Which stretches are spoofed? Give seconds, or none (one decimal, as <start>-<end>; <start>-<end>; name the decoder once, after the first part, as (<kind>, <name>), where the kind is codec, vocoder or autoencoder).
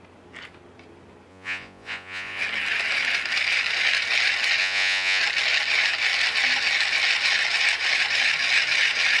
1.3-2.4 (vocoder, Vocos); 4.6-5.2